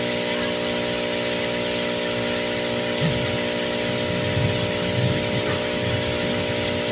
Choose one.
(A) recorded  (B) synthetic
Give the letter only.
A